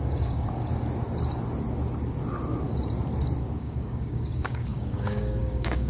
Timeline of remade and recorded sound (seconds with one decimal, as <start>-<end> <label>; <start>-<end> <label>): 0.0-0.7 remade; 0.7-3.4 recorded; 3.4-5.9 remade